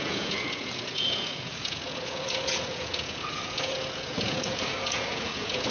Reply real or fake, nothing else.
fake